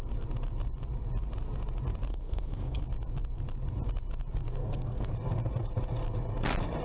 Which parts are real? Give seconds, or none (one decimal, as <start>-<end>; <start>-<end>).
0.0-2.1; 2.8-4.6; 5.1-6.8